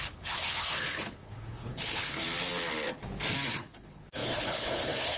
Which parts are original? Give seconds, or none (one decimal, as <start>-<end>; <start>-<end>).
2.2-3.5